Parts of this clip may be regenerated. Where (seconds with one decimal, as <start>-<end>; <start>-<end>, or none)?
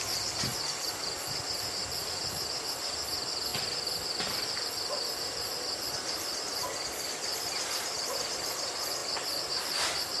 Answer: 3.5-5.9